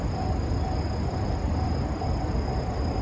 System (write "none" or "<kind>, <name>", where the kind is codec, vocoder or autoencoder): none